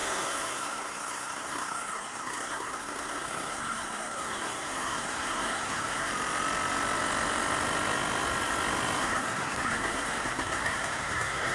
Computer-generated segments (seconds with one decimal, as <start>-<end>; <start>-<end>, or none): 0.0-6.1; 9.0-11.5